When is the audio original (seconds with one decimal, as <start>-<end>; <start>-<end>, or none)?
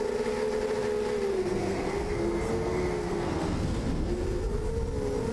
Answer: 0.0-1.3; 4.5-5.3